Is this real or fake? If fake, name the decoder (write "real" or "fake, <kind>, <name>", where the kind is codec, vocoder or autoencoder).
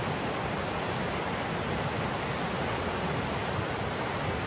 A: real